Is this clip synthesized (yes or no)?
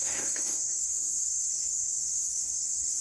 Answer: yes